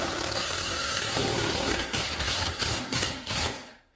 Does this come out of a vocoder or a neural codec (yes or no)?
yes